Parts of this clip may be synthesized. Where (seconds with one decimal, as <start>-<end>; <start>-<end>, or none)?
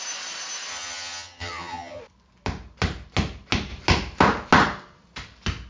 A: 0.7-2.0